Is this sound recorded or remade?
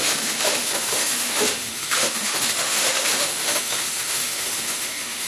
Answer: remade